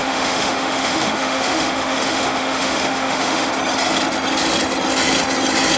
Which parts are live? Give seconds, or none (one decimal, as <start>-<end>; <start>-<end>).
3.5-5.8